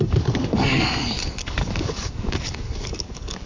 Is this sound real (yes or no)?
no